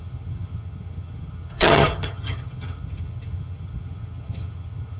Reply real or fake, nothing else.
fake